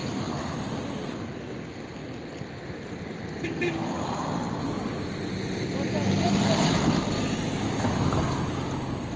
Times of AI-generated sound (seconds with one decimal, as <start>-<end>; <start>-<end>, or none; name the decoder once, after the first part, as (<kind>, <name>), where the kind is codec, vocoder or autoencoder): 2.0-6.9 (vocoder, BigVGAN v2)